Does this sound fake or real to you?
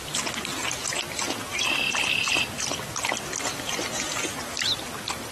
real